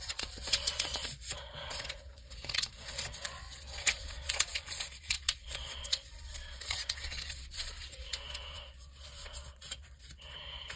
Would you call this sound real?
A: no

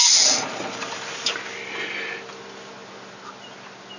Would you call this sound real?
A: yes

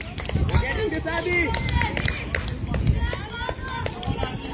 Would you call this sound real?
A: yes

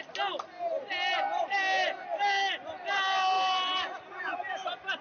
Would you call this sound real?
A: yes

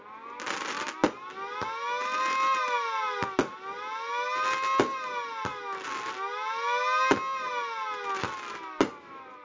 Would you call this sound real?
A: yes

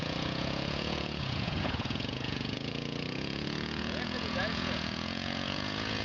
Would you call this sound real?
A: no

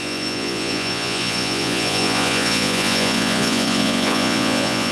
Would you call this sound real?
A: no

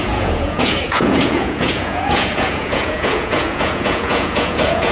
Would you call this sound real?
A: no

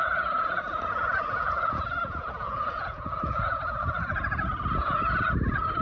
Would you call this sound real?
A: no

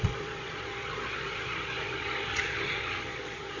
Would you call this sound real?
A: no